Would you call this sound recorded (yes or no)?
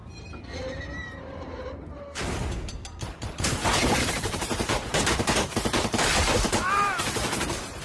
no